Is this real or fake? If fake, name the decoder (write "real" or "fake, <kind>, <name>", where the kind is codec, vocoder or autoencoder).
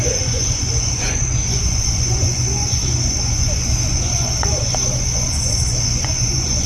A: fake, vocoder, Vocos